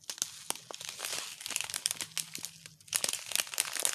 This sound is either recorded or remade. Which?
recorded